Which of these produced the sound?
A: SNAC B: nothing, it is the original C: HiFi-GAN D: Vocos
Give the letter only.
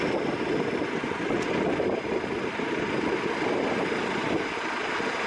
B